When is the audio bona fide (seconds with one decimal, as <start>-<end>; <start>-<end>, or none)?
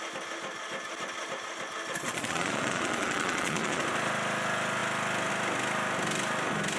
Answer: 0.0-2.1; 3.8-6.8